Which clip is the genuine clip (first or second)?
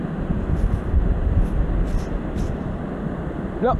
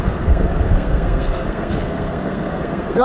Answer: first